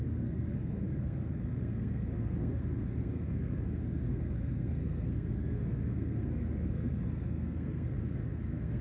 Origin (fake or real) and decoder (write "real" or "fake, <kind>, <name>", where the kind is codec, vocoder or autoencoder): fake, codec, SNAC